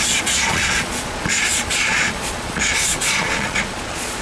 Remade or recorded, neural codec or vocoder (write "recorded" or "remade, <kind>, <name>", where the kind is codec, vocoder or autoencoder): remade, vocoder, Vocos